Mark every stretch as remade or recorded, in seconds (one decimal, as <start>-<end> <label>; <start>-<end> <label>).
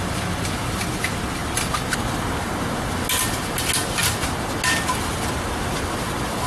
0.0-6.5 recorded